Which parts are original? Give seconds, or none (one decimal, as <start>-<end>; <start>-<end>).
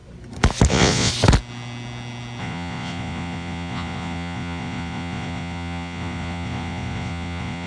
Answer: 0.0-0.7; 1.1-2.4